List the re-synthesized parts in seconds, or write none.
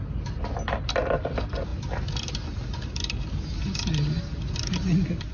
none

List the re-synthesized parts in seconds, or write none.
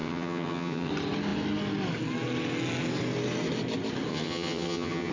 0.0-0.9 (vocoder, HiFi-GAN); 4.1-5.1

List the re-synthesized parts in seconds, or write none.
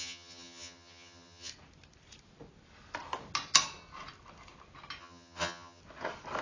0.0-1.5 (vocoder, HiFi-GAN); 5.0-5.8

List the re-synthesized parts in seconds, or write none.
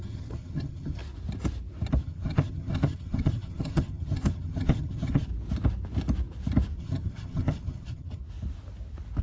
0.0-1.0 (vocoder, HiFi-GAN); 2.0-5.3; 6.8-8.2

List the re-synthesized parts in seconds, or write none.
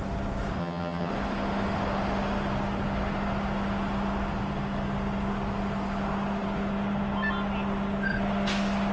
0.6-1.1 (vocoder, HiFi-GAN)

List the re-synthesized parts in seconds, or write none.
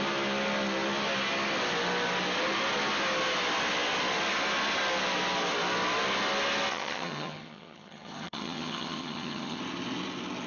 6.7-9.6 (vocoder, HiFi-GAN)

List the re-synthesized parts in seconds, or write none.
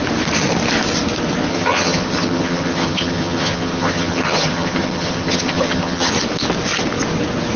1.5-6.1 (vocoder, HiFi-GAN)